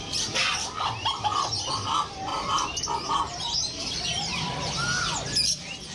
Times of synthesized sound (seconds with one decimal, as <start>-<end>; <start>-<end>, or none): 0.5-1.7; 2.3-2.8; 3.3-4.6